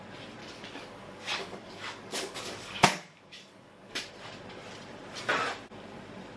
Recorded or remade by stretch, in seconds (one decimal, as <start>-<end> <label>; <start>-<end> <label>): 0.0-0.4 recorded; 0.4-4.1 remade; 4.1-6.4 recorded